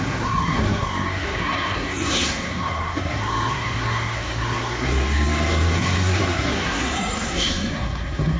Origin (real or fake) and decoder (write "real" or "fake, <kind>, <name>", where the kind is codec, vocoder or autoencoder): fake, codec, SNAC